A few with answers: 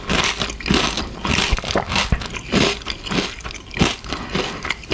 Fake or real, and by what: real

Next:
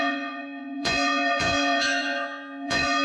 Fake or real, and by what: fake, vocoder, Vocos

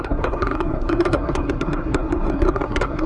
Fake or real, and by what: fake, codec, SNAC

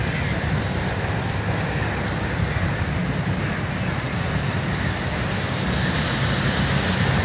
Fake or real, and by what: real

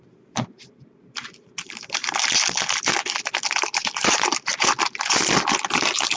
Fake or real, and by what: real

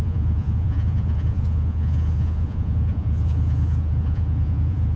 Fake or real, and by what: fake, vocoder, Vocos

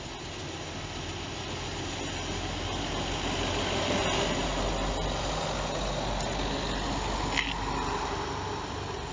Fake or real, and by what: real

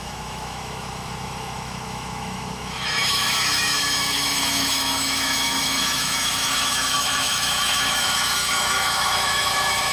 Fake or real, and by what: fake, autoencoder, DAC-VAE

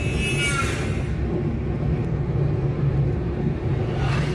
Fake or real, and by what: real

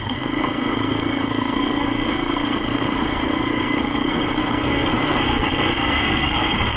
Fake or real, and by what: fake, codec, SNAC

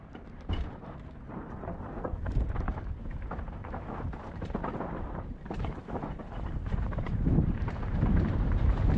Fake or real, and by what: fake, vocoder, BigVGAN v2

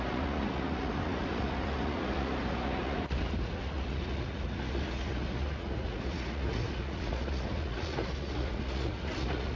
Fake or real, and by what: fake, vocoder, Vocos